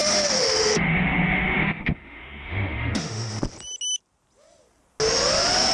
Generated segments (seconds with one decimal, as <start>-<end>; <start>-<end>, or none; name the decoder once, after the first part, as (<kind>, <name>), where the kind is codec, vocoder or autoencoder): 0.0-3.4 (autoencoder, DAC-VAE)